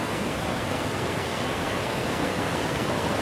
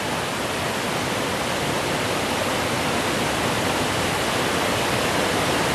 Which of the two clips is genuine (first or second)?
second